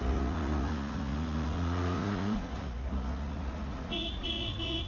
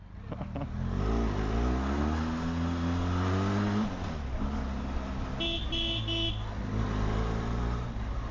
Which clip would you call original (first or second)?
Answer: second